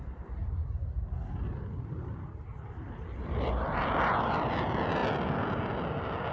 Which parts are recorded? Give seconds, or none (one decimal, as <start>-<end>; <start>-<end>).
0.0-6.3